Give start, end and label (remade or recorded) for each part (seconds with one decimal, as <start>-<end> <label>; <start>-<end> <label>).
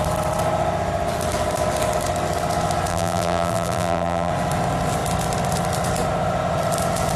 0.0-2.9 recorded; 2.9-4.3 remade; 4.3-7.2 recorded